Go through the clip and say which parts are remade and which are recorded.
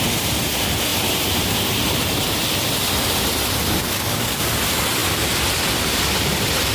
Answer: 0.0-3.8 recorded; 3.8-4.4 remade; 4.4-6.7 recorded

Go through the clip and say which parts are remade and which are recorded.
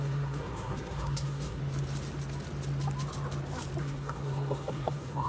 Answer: 0.0-1.6 remade; 1.6-3.8 recorded; 3.8-5.3 remade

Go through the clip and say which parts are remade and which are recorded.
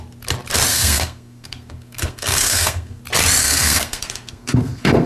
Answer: 0.0-0.7 recorded; 0.7-3.0 remade; 3.0-3.4 recorded; 3.4-5.1 remade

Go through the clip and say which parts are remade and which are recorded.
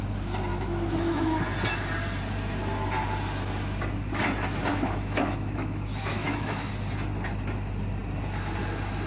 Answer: 0.0-0.5 recorded; 0.5-1.4 remade; 1.4-4.7 recorded; 4.7-6.7 remade; 6.7-9.1 recorded